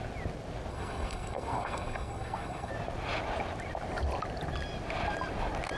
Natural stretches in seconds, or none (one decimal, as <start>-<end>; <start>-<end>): 0.0-0.7; 2.7-5.8